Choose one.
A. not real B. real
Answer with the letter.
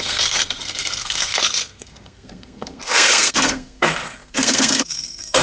A